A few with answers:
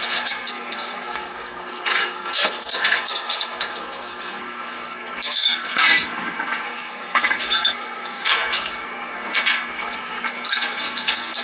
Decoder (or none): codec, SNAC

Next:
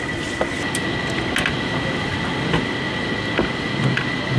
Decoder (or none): none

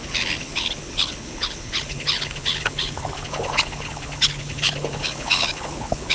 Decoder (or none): codec, HILCodec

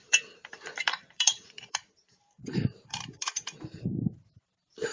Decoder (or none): vocoder, BigVGAN v2